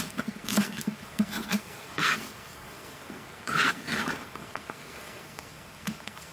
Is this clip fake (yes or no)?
yes